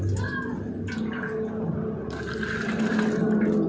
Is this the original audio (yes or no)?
yes